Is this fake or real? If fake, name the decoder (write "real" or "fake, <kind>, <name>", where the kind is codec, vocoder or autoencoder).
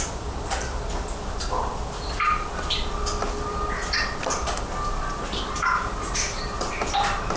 real